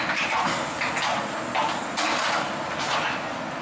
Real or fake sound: real